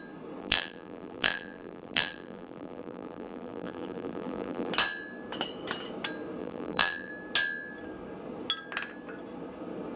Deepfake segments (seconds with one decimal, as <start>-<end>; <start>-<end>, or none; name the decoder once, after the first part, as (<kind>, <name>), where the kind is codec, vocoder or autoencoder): 0.4-4.7 (vocoder, BigVGAN v2); 6.4-7.1